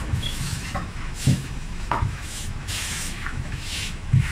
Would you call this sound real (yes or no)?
no